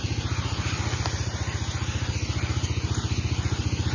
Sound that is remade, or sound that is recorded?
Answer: recorded